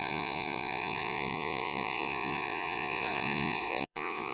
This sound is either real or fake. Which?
fake